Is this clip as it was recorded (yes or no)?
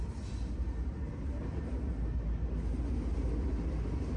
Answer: yes